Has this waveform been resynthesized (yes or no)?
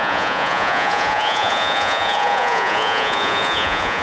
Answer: yes